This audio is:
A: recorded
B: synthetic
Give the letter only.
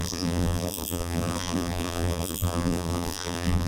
B